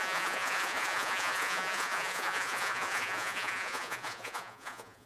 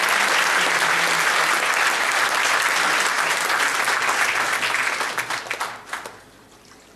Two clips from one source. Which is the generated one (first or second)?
first